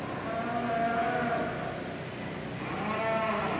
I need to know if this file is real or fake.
real